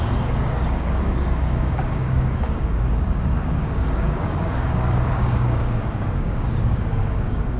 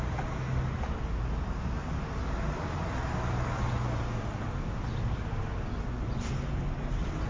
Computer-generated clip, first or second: first